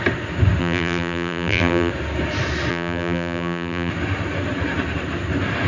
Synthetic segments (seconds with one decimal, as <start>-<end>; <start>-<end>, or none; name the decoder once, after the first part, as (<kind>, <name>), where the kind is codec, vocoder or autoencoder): 0.6-1.9 (vocoder, BigVGAN v2); 2.7-3.9